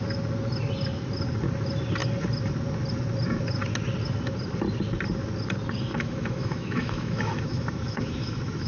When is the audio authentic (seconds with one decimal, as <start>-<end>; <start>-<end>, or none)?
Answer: 0.0-5.9